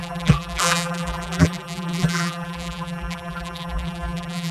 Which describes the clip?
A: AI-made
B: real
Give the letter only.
A